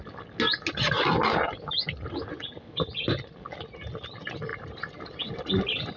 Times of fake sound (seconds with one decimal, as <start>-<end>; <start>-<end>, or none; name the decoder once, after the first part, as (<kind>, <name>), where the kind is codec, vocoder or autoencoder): 4.5-5.3 (vocoder, BigVGAN v2)